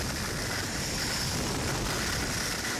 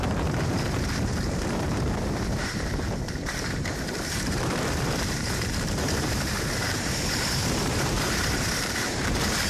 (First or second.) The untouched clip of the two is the first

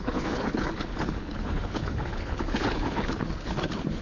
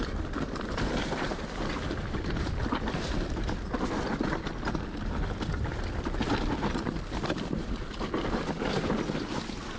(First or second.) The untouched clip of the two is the second